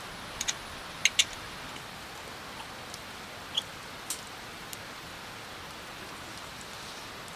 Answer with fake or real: real